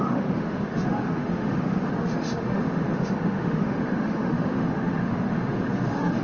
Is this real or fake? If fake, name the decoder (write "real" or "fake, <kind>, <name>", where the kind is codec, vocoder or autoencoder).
fake, autoencoder, DAC-VAE